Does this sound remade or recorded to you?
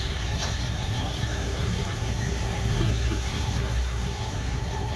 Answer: remade